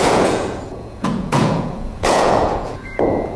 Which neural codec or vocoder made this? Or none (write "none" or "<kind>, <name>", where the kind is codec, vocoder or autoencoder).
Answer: vocoder, Vocos